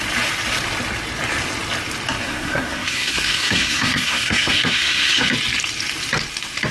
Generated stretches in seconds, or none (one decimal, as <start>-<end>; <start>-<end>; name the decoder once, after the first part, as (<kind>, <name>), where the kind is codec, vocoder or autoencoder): 2.2-5.3 (codec, SNAC)